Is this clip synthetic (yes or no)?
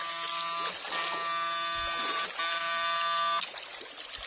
no